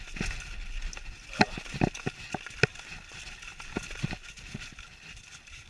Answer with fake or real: real